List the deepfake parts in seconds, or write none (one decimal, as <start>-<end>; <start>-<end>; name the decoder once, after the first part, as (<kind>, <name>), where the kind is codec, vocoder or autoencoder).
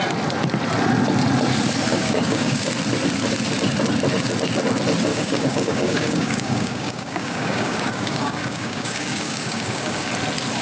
1.9-2.7 (codec, DAC); 5.1-10.1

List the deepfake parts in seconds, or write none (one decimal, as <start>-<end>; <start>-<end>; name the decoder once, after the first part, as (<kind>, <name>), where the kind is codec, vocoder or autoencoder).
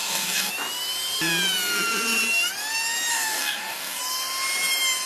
0.0-0.5 (codec, DAC); 3.1-4.0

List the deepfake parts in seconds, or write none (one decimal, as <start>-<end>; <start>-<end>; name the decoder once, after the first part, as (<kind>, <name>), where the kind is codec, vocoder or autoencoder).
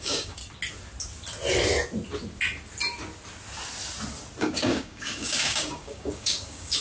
0.0-0.4 (codec, DAC); 4.4-6.8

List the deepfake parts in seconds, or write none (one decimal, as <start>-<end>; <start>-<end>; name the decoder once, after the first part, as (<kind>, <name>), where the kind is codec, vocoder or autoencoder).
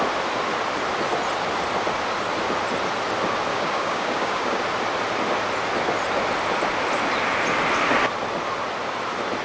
3.5-4.6 (codec, DAC)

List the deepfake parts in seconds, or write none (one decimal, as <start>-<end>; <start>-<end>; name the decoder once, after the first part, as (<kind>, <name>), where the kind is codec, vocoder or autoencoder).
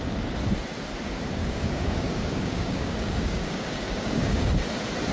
1.4-4.5 (codec, DAC)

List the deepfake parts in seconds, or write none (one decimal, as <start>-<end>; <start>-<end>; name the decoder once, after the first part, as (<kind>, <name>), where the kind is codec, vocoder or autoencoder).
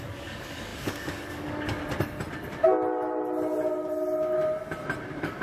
0.0-1.8 (codec, DAC); 5.0-5.4